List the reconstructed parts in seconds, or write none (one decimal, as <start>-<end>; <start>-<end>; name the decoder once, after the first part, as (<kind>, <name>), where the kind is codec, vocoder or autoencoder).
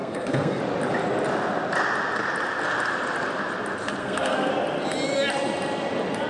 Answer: 0.0-0.6 (codec, SNAC); 4.0-4.5